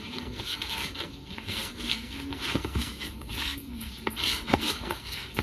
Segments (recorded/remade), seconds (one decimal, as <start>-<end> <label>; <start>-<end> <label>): 0.0-5.4 remade